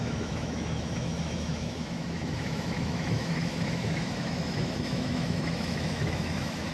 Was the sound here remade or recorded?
remade